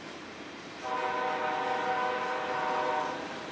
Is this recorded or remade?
recorded